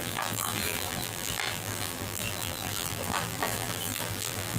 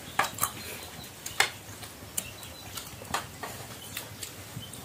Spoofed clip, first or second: first